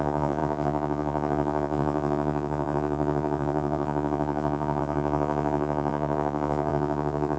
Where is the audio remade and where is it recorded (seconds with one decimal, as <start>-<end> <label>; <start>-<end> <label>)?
0.0-7.4 remade